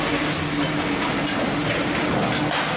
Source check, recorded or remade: recorded